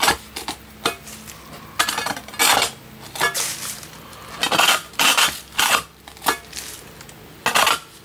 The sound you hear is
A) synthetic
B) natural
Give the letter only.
B